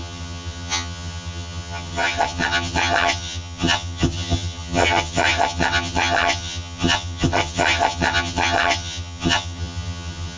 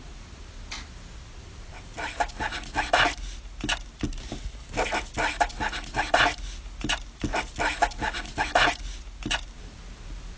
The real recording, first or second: second